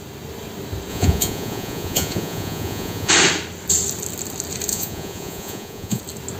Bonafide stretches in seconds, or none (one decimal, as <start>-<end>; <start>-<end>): 0.0-0.9; 3.1-4.7; 6.0-6.4